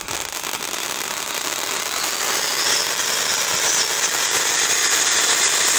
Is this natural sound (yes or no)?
yes